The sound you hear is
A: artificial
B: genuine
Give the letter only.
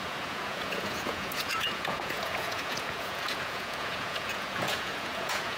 A